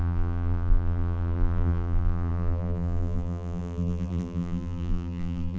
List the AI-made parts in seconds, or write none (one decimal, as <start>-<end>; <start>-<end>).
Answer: 0.0-5.6